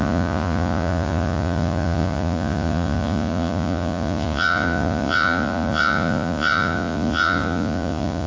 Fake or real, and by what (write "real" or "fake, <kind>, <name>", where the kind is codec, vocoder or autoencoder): fake, vocoder, Vocos